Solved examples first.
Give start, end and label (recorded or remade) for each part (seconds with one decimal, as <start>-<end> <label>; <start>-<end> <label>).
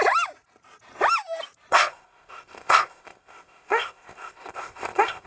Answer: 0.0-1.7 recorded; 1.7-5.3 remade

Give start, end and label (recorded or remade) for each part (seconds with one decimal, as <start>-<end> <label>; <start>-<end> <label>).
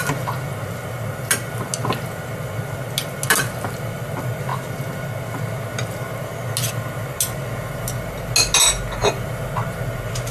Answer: 0.0-10.3 recorded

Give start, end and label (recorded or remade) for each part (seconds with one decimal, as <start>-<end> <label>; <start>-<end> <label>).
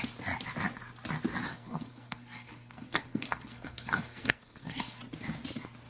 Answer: 0.0-1.5 recorded; 1.5-5.0 remade; 5.0-5.9 recorded